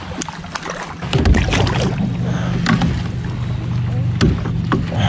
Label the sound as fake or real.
real